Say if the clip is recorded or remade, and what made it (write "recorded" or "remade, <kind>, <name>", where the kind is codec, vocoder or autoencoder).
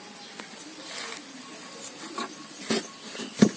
recorded